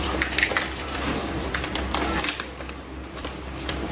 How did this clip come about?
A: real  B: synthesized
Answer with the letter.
B